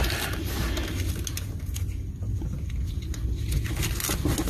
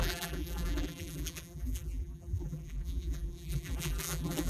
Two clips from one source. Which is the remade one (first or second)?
second